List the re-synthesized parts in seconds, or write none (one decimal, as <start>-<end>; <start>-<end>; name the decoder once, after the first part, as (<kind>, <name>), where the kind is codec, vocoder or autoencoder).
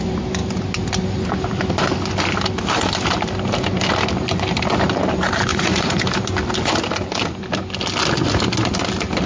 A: 5.5-6.0 (vocoder, Vocos)